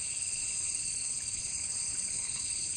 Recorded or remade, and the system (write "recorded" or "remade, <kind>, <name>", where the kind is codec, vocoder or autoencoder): remade, codec, HILCodec